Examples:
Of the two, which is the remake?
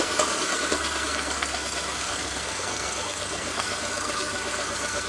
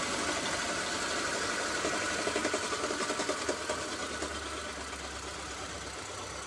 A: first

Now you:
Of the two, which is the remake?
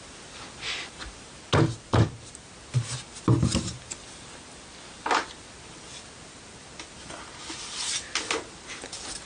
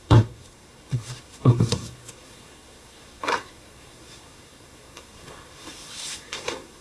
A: second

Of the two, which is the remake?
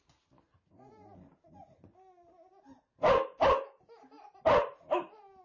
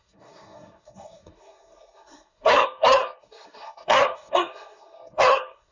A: second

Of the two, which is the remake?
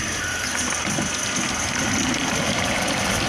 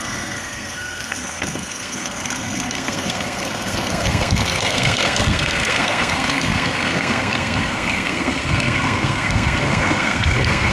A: second